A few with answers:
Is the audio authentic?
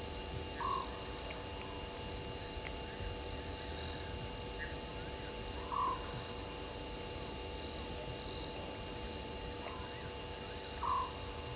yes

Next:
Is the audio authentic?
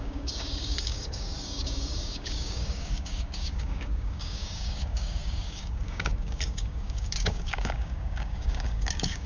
no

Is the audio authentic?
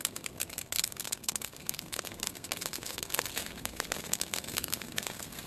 no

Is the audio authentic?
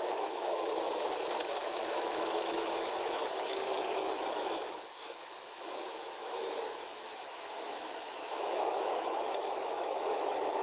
no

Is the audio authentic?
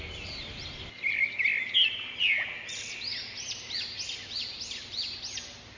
yes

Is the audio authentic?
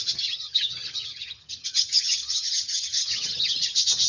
no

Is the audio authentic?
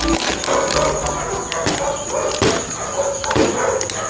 yes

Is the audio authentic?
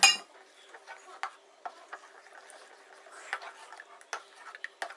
yes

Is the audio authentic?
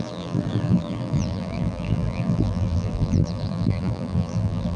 no